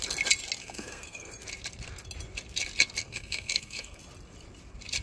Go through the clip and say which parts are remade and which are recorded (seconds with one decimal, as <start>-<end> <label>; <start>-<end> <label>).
0.0-0.6 recorded; 0.6-1.3 remade; 1.3-3.0 recorded; 3.0-4.0 remade; 4.0-5.0 recorded